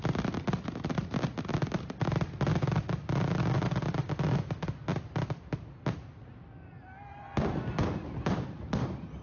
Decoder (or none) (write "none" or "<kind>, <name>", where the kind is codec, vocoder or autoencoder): none